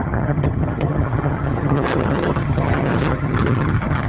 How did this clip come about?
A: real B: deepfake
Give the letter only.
B